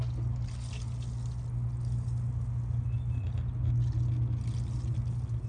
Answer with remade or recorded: recorded